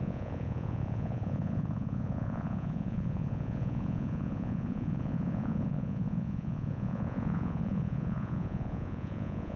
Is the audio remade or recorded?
remade